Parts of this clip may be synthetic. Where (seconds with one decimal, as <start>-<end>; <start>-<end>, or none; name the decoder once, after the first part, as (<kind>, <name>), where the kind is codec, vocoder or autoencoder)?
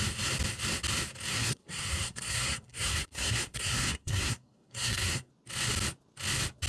1.3-5.3 (codec, SNAC)